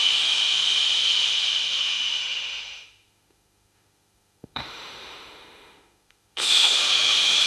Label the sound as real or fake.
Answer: fake